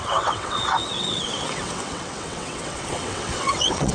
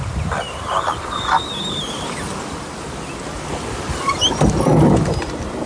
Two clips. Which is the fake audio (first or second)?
first